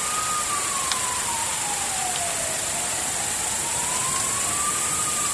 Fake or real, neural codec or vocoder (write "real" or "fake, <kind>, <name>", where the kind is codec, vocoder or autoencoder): real